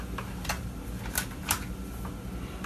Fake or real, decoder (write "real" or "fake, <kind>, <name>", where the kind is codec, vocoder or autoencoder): real